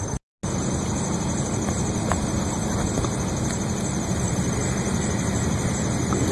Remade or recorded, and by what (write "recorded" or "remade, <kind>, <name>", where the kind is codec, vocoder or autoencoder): recorded